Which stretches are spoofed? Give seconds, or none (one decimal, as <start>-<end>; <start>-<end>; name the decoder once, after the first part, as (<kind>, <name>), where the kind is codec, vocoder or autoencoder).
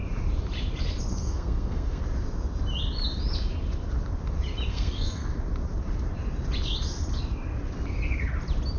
1.1-2.0 (codec, SNAC); 4.7-5.2